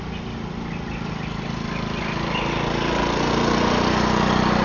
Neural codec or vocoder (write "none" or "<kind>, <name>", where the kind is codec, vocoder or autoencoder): none